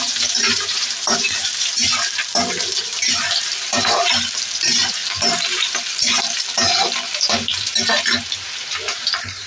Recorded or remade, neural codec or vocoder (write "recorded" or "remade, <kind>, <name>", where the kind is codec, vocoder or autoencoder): remade, vocoder, BigVGAN v2